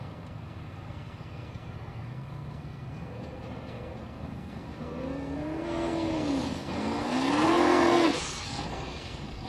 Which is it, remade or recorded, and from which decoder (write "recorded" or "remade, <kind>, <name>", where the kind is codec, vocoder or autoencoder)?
remade, codec, SNAC